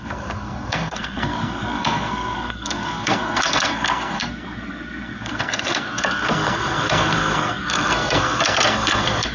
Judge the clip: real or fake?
fake